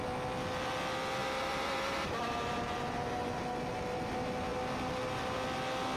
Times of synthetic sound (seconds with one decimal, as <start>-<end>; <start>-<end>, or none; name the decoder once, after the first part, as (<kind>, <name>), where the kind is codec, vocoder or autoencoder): 1.2-3.4 (vocoder, BigVGAN v2)